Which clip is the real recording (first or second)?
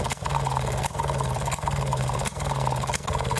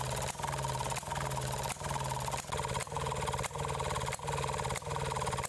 second